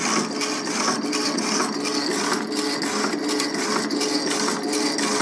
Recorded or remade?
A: recorded